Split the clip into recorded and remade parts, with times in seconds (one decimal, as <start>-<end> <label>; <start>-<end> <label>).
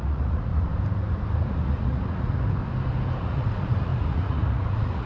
0.0-0.5 remade; 0.5-1.5 recorded; 1.5-2.6 remade; 2.6-3.2 recorded; 3.2-5.1 remade